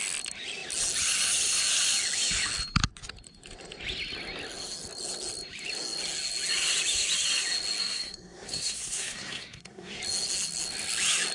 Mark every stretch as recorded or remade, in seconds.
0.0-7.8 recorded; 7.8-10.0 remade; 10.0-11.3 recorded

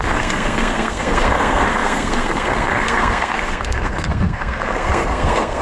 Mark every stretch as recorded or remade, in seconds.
0.0-5.6 remade

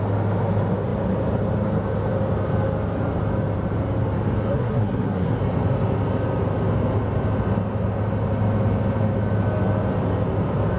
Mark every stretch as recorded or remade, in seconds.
0.0-4.5 recorded; 4.5-5.4 remade; 5.4-10.8 recorded